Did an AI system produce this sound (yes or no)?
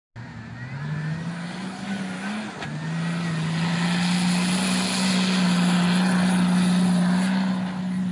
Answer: no